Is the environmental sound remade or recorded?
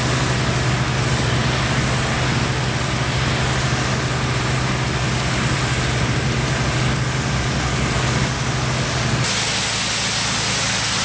recorded